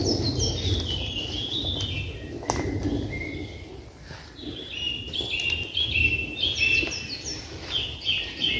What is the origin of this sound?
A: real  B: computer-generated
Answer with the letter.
A